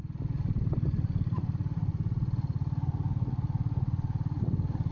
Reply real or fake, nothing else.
real